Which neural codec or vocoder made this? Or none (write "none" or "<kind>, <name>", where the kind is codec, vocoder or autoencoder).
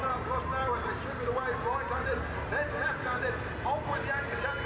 none